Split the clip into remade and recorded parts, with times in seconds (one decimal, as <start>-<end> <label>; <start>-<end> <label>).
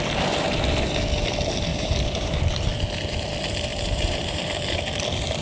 0.0-1.7 recorded; 1.7-2.3 remade; 2.3-3.7 recorded; 3.7-5.0 remade; 5.0-5.4 recorded